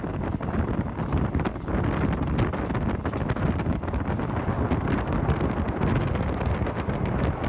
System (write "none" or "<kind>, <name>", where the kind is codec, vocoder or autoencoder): none